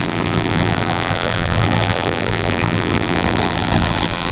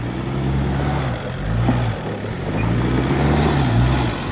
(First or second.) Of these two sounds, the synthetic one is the first